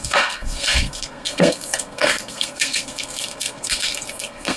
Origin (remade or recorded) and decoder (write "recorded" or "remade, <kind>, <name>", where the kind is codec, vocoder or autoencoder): remade, codec, SNAC